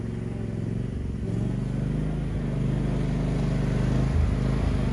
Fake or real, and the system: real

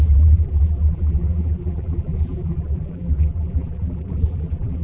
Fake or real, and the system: fake, vocoder, BigVGAN v2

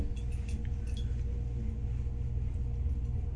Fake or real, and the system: real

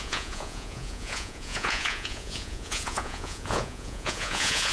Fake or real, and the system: fake, vocoder, Vocos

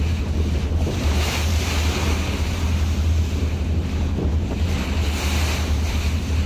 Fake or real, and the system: fake, vocoder, BigVGAN v2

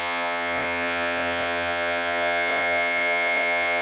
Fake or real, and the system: fake, vocoder, Vocos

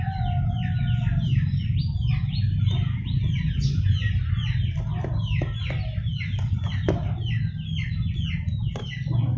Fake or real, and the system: real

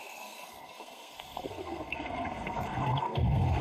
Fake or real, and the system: fake, codec, SNAC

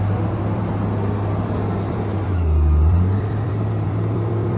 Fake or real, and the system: fake, vocoder, BigVGAN v2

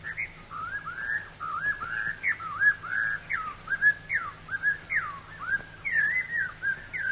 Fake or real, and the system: real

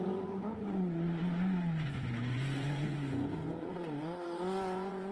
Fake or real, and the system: fake, vocoder, Vocos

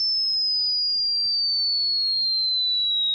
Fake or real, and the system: real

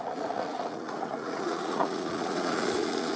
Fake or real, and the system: fake, vocoder, Vocos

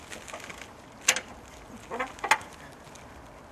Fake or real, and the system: real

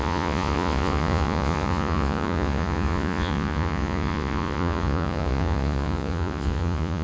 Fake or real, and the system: fake, vocoder, Vocos